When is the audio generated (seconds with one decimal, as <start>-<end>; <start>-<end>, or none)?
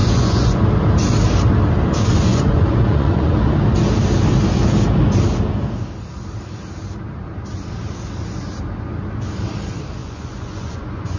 0.0-0.6; 2.3-3.5; 10.0-11.2